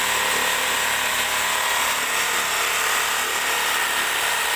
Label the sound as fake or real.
real